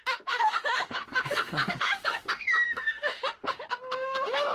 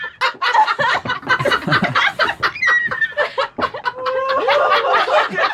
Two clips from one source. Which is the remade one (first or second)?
first